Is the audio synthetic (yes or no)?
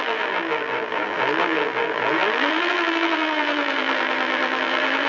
yes